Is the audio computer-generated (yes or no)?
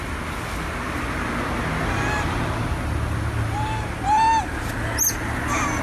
no